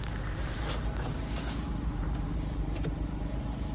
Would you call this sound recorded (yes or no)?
no